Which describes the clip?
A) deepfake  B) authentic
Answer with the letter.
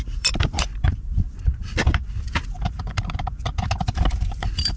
A